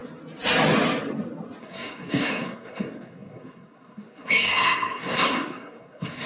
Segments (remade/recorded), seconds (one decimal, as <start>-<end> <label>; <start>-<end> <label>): 0.0-1.6 recorded; 1.6-6.3 remade